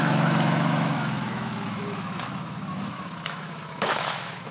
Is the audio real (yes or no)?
no